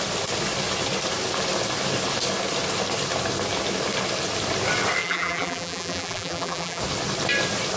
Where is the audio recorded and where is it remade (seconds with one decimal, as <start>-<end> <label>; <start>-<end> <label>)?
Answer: 0.0-5.0 recorded; 5.0-6.8 remade; 6.8-7.8 recorded